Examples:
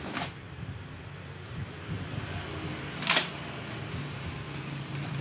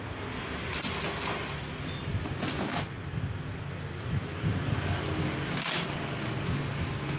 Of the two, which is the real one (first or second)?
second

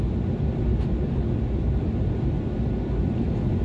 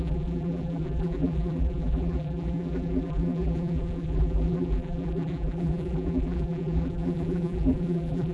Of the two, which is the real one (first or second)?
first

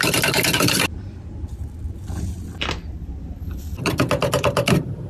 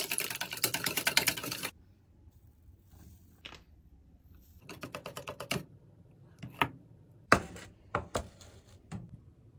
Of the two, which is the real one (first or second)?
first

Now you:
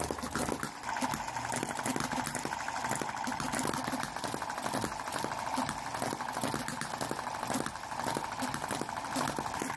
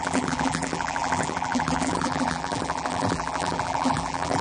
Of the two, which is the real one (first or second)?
first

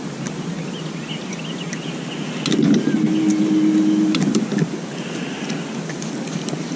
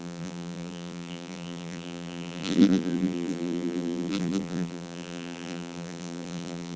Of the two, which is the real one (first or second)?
first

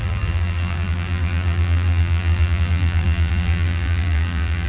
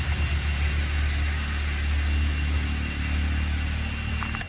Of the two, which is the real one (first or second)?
second